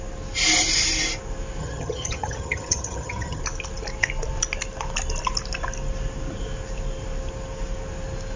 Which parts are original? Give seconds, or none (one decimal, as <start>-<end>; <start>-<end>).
0.0-1.6; 3.4-8.4